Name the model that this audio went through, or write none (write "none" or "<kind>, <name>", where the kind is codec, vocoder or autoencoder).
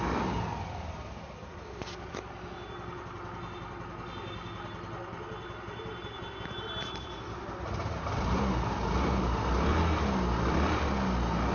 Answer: none